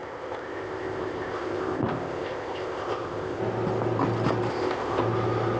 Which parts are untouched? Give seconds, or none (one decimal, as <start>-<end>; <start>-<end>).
3.4-4.5; 5.0-5.6

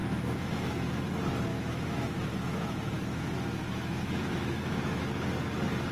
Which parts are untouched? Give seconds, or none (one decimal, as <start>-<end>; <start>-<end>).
0.9-1.5; 5.0-5.9

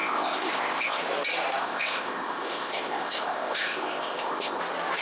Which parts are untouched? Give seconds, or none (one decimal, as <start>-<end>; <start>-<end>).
1.0-1.6; 4.6-5.0

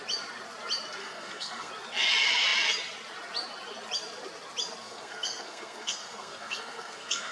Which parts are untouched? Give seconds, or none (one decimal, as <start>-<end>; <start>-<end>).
0.0-1.0; 1.7-4.8

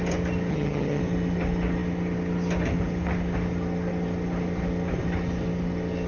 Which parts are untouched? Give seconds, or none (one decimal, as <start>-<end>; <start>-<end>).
0.0-0.5; 1.0-6.1